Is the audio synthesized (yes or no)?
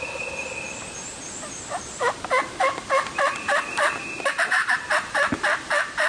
no